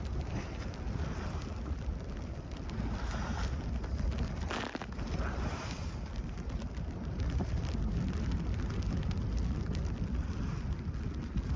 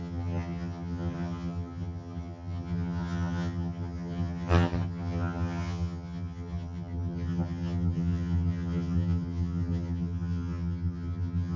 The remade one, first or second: second